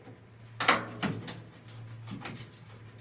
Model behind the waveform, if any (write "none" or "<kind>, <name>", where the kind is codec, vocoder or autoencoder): none